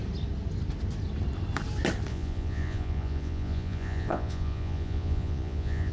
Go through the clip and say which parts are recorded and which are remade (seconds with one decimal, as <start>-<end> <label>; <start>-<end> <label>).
0.0-2.1 recorded; 2.1-5.9 remade